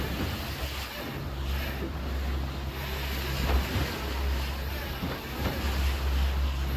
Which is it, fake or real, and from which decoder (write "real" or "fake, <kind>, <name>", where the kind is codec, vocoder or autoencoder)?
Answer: real